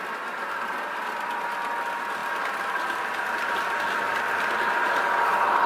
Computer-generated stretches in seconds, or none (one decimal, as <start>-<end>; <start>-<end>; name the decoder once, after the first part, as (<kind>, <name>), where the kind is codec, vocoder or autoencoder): none